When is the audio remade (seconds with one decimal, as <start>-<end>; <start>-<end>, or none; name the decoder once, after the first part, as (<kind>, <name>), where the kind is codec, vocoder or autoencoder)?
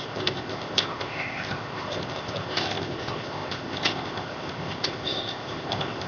0.0-6.1 (codec, ZipCodec)